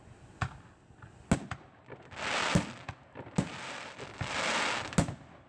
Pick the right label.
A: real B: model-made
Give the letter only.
A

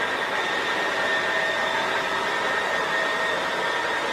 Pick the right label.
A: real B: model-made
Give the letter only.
B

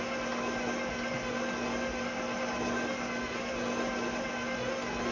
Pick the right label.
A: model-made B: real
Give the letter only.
B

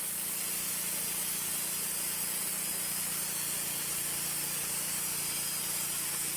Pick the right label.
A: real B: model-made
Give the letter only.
A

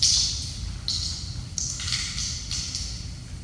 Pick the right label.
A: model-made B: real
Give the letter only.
B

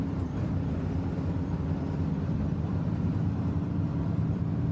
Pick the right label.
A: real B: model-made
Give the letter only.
B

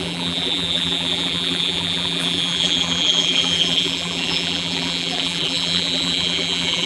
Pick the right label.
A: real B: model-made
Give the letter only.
B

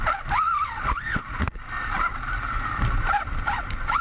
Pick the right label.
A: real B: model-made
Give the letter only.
A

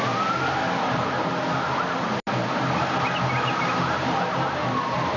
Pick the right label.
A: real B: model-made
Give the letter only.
A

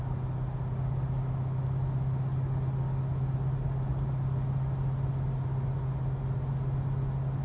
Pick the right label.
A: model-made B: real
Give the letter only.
B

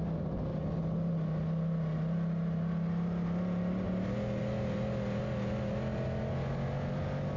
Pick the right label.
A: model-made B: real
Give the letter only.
B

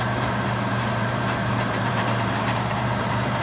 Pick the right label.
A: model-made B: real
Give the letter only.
A